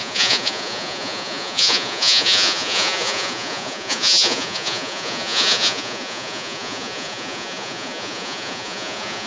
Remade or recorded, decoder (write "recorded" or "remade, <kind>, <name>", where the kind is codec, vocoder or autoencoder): remade, vocoder, Vocos